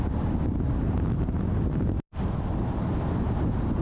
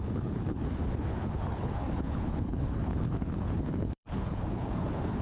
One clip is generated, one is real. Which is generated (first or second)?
second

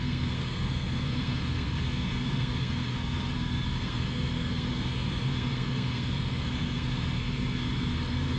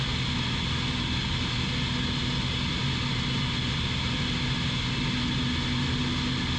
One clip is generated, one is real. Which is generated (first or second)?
first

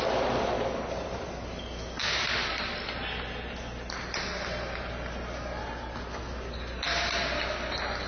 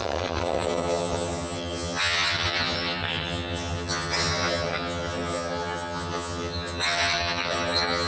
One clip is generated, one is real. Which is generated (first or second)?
second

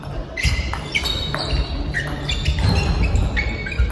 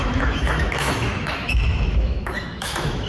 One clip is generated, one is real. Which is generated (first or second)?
second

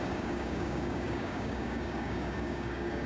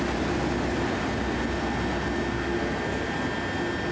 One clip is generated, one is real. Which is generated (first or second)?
first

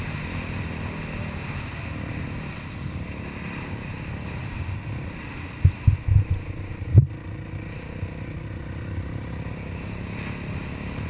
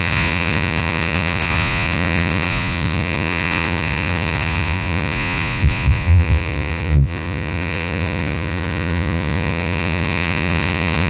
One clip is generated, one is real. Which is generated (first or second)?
second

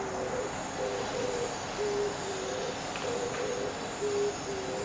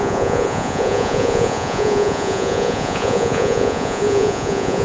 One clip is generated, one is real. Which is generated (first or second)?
second